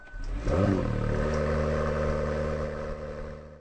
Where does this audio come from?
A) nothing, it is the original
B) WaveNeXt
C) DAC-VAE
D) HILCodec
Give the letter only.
A